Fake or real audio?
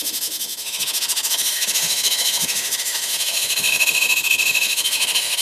fake